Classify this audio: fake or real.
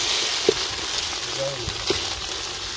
real